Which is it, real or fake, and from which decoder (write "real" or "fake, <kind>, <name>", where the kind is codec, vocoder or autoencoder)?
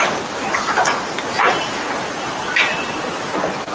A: real